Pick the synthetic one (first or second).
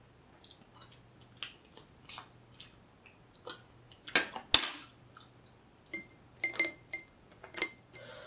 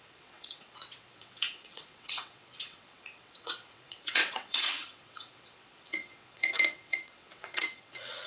second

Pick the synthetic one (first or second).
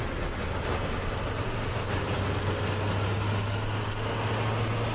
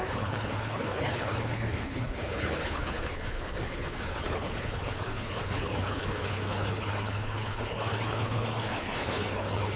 second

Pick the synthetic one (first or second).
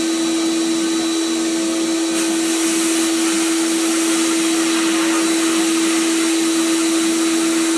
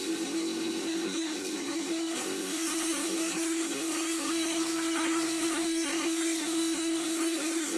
second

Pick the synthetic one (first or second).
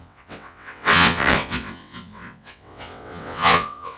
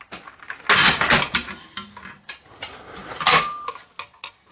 first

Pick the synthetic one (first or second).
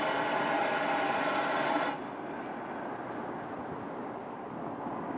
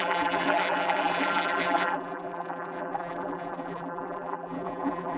second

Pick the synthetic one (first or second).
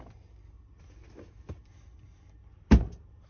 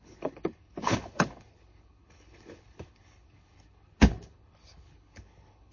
second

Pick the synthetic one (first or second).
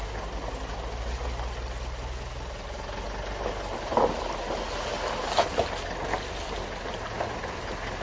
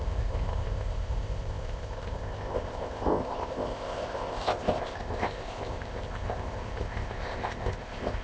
second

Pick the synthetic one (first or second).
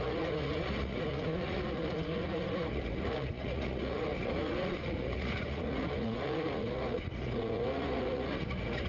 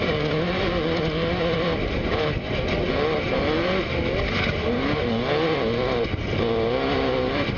first